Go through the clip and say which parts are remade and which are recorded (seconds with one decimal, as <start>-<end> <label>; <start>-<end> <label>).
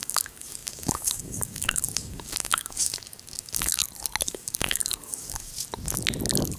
0.0-3.8 remade; 3.8-4.3 recorded; 4.3-5.5 remade; 5.5-6.6 recorded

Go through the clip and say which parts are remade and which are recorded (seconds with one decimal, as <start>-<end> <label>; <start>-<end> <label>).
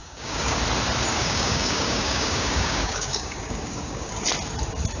0.0-0.6 remade; 0.6-1.1 recorded; 1.1-4.1 remade; 4.1-5.0 recorded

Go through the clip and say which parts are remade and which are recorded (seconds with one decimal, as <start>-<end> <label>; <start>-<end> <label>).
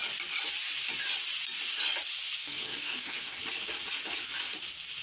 0.0-2.4 recorded; 2.4-3.4 remade; 3.4-5.0 recorded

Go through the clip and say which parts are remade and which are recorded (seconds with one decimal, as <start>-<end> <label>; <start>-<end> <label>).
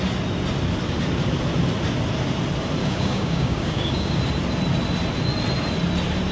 0.0-2.8 recorded; 2.8-4.2 remade; 4.2-6.3 recorded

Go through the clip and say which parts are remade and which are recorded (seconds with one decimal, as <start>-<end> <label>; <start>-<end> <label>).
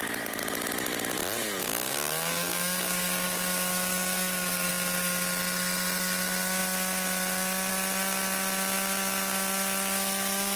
0.0-1.6 recorded; 1.6-4.7 remade; 4.7-10.6 recorded